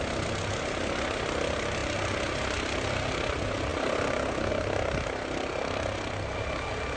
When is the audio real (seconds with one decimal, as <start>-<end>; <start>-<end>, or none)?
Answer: 0.0-7.0